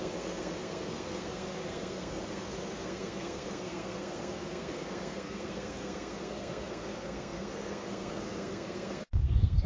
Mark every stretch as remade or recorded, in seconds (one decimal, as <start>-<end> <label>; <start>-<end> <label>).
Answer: 0.0-9.7 remade